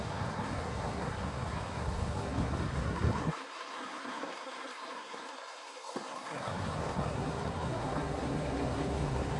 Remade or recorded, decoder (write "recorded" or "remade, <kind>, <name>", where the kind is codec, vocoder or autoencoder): remade, codec, SNAC